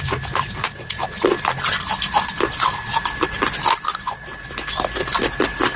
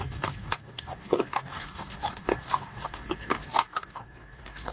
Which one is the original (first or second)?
first